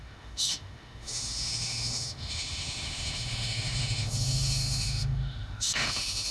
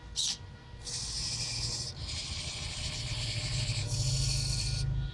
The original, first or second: second